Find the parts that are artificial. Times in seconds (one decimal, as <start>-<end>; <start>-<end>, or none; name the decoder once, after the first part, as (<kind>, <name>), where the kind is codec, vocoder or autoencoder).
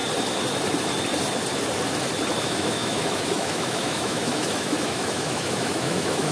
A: 2.4-6.3 (autoencoder, DAC-VAE)